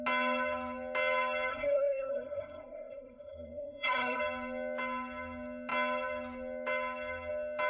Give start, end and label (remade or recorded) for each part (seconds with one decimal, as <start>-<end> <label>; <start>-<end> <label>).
0.0-1.5 recorded; 1.5-4.2 remade; 4.2-7.7 recorded